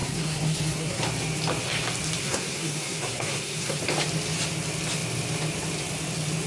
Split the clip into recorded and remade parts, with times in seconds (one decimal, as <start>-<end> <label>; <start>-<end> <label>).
0.0-1.0 remade; 1.0-2.2 recorded; 2.2-3.8 remade; 3.8-6.5 recorded